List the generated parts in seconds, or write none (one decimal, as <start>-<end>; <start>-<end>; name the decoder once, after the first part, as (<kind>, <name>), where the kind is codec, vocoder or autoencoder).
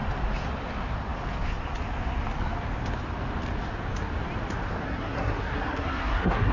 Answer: 4.8-6.5 (codec, SNAC)